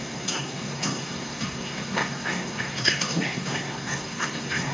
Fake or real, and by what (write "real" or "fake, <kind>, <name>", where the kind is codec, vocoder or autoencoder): fake, codec, SNAC